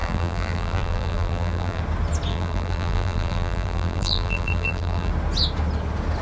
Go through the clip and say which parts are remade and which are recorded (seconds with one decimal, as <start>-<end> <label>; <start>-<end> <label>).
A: 0.0-1.8 remade; 1.8-2.3 recorded; 2.3-5.1 remade; 5.1-6.2 recorded